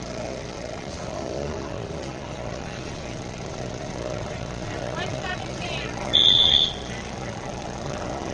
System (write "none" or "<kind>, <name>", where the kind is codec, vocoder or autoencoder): vocoder, Vocos